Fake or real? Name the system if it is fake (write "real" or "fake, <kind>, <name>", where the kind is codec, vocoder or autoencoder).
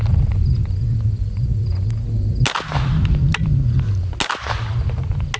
real